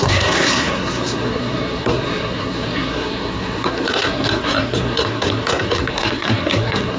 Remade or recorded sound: remade